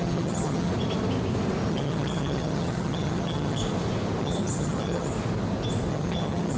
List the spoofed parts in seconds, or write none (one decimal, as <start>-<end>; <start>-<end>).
0.0-0.7; 1.7-3.6; 4.2-5.1; 5.9-6.6